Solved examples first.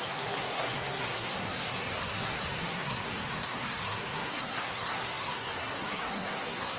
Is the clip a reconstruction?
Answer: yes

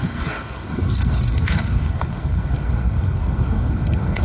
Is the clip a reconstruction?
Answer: yes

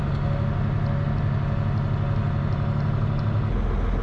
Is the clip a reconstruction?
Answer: no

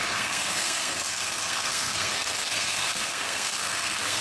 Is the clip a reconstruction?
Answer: yes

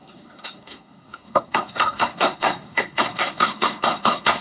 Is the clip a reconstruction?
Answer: yes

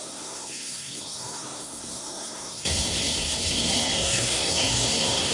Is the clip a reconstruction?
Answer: yes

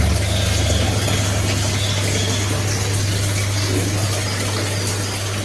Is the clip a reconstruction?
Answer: no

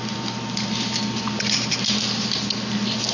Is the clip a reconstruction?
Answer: no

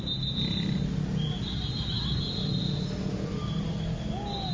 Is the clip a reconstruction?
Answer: no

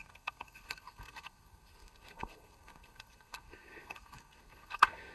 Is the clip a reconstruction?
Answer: yes